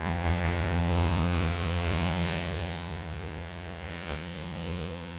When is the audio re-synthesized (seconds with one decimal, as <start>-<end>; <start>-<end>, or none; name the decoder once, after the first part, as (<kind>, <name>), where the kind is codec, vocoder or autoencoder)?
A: 0.0-5.2 (vocoder, Vocos)